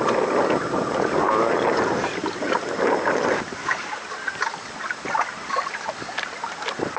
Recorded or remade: recorded